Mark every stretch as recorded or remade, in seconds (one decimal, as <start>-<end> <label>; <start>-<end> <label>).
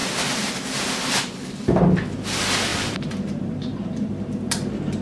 0.0-0.5 remade; 0.5-2.7 recorded; 2.7-4.1 remade; 4.1-5.0 recorded